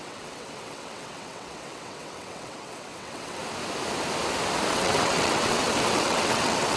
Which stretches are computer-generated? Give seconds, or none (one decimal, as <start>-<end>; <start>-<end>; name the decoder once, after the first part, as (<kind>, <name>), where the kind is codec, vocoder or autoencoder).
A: 0.0-3.4 (vocoder, WaveNeXt); 4.7-6.8